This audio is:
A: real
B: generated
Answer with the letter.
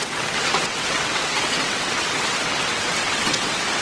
B